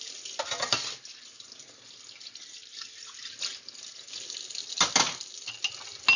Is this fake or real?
real